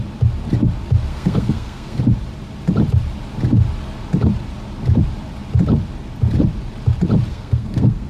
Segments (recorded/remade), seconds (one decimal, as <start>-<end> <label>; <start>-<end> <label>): 0.0-1.1 recorded; 1.1-2.0 remade; 2.0-7.3 recorded; 7.3-8.1 remade